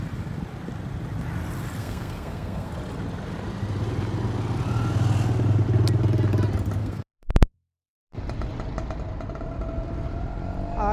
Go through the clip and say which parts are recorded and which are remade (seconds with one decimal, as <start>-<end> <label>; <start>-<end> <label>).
0.0-1.8 recorded; 1.8-2.7 remade; 2.7-6.8 recorded; 6.8-7.3 remade; 7.3-10.9 recorded